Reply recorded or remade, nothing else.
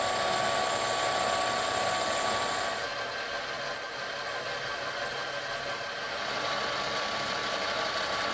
recorded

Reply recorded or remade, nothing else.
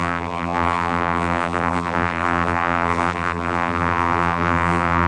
remade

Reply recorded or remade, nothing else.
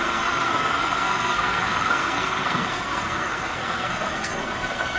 remade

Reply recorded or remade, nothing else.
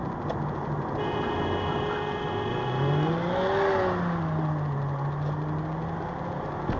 recorded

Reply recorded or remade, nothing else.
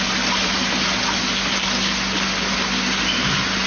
recorded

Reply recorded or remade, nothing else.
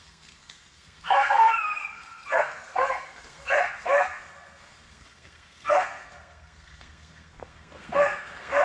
remade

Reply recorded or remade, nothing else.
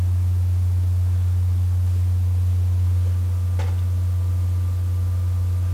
recorded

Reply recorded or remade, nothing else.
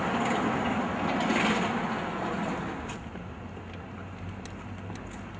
recorded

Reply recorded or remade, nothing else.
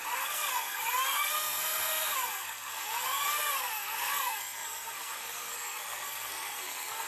remade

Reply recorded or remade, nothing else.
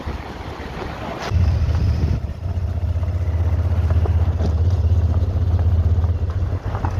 recorded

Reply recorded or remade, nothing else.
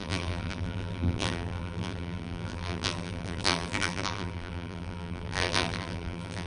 remade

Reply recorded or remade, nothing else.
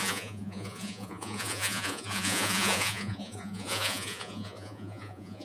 remade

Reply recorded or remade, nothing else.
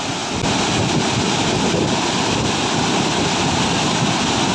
recorded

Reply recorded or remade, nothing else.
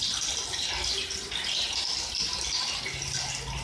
recorded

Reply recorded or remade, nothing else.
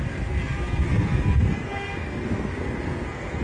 remade